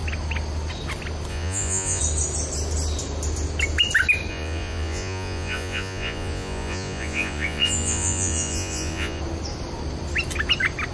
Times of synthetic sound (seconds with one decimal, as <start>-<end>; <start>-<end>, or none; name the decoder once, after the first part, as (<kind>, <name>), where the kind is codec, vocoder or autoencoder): 1.3-2.0 (vocoder, Vocos); 4.3-9.2